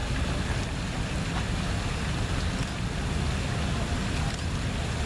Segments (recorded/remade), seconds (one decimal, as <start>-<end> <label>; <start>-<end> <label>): 0.0-5.1 recorded